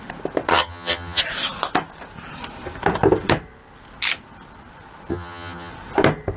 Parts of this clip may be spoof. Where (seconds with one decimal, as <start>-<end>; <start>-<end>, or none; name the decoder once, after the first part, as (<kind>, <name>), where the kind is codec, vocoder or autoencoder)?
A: 0.5-1.2 (vocoder, HiFi-GAN); 5.1-5.7